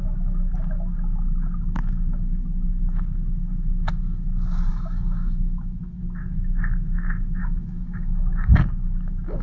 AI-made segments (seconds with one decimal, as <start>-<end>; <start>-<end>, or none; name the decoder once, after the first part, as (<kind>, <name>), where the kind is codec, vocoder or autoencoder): 4.7-6.0 (autoencoder, DAC-VAE); 7.4-8.6